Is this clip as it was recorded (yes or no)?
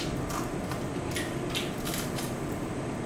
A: yes